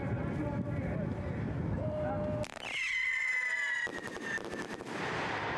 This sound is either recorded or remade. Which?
recorded